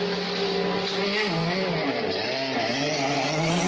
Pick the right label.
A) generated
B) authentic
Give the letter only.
B